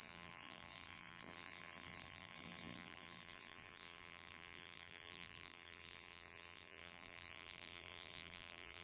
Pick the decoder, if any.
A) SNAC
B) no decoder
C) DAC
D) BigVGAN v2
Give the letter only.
D